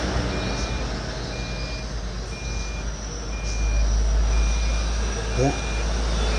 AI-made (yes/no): no